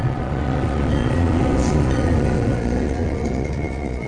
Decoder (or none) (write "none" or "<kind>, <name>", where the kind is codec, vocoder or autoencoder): vocoder, Vocos